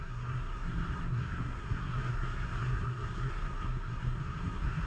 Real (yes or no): no